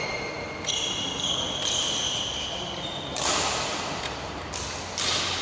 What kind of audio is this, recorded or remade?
recorded